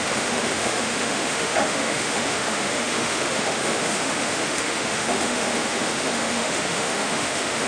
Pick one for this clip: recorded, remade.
remade